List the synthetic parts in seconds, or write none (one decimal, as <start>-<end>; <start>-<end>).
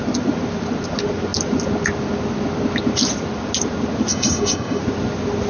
4.1-4.8